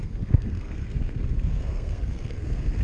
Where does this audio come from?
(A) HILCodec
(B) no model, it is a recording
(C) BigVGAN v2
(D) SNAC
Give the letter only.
D